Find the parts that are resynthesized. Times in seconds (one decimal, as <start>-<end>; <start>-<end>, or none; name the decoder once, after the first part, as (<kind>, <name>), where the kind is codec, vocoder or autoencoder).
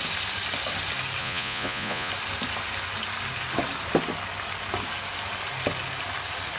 1.2-2.1 (vocoder, Vocos)